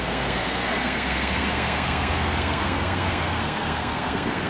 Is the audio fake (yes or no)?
yes